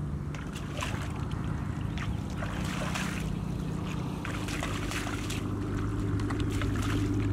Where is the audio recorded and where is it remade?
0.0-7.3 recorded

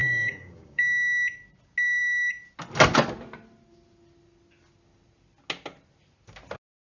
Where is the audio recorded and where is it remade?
0.0-0.8 remade; 0.8-6.9 recorded

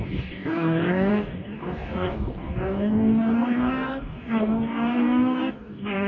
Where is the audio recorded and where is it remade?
0.0-6.1 remade

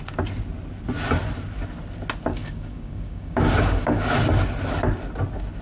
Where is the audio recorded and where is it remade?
0.0-2.3 recorded; 2.3-4.1 remade; 4.1-5.6 recorded

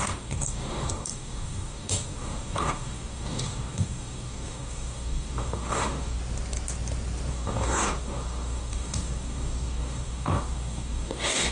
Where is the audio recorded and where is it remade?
0.0-6.2 remade; 6.2-7.3 recorded; 7.3-11.5 remade

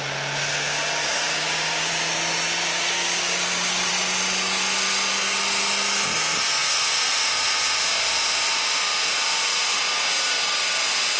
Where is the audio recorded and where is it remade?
0.0-1.0 recorded; 1.0-1.9 remade; 1.9-2.7 recorded; 2.7-3.9 remade; 3.9-11.2 recorded